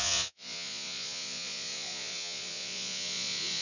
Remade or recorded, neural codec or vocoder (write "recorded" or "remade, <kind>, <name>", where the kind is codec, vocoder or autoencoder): remade, vocoder, Vocos